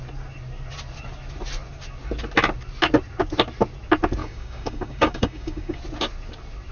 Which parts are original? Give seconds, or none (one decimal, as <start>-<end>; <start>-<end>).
0.0-4.2; 5.8-6.7